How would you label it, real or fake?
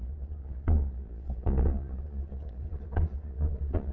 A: fake